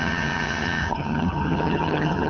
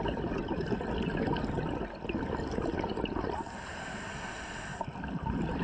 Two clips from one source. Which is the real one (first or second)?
second